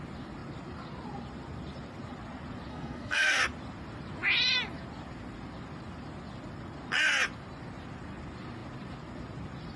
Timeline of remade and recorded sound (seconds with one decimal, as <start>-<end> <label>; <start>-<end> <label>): 0.0-2.7 recorded; 2.7-3.4 remade; 3.4-9.8 recorded